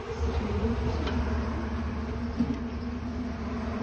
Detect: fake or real real